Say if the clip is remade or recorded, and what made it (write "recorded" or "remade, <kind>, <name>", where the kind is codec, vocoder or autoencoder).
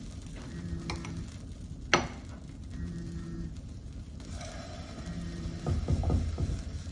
recorded